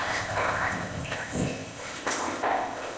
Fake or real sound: fake